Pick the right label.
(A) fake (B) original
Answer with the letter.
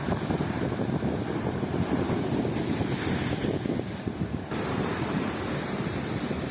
A